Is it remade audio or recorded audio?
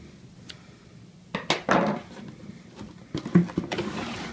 recorded